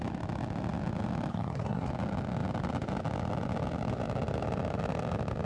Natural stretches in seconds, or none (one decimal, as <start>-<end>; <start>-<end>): 0.0-1.3; 1.9-5.5